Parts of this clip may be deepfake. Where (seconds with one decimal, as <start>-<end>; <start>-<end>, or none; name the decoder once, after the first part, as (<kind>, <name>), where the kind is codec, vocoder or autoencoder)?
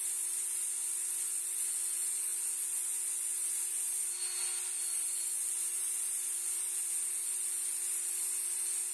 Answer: none